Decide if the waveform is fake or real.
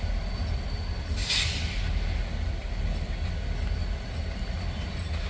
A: real